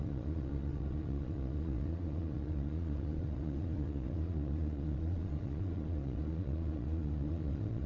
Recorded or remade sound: remade